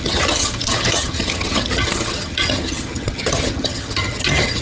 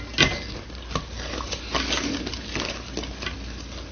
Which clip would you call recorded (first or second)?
second